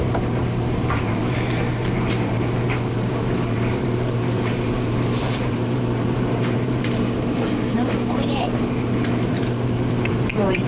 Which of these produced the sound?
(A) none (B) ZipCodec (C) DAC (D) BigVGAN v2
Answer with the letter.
D